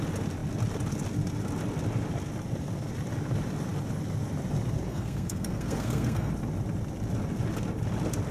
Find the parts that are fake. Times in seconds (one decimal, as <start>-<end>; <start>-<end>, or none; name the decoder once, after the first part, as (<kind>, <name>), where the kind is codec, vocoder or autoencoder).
4.9-6.3 (codec, SNAC)